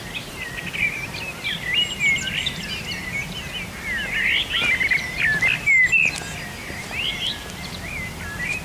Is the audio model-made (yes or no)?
no